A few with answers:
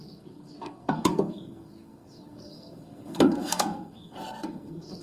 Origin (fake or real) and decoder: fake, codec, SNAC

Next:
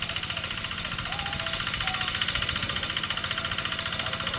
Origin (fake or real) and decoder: real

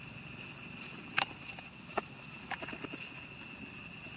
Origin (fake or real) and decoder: real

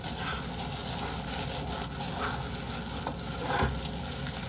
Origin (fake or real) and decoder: real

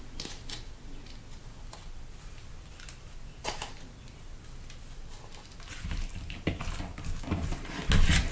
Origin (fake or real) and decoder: real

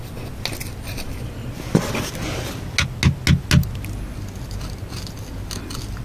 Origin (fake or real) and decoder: real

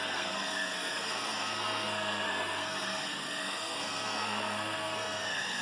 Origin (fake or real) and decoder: fake, codec, SNAC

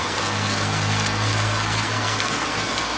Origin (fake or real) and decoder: fake, codec, SNAC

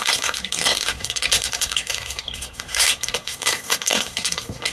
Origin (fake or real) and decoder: fake, codec, SNAC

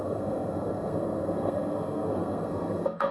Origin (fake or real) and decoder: fake, codec, SNAC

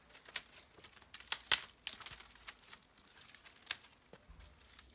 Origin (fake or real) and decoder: real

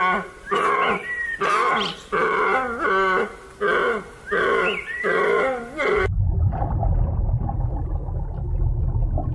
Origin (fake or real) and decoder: real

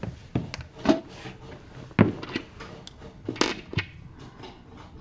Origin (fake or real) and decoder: real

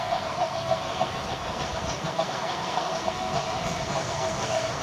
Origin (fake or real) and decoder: fake, codec, SNAC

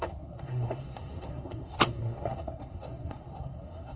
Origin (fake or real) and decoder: fake, codec, SNAC